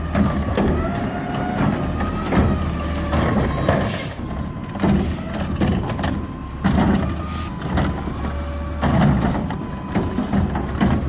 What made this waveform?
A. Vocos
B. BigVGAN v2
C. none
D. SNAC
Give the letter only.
C